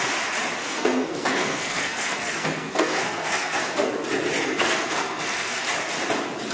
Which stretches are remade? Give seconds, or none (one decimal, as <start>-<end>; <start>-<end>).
0.6-3.9; 4.4-5.6